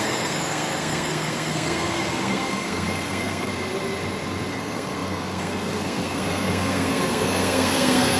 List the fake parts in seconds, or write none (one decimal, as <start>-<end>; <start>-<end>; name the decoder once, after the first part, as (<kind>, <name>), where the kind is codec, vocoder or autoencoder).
0.0-3.5 (codec, SNAC); 4.5-8.2